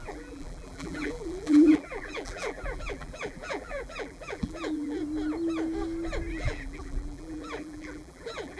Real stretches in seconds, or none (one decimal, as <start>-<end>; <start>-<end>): 5.0-6.3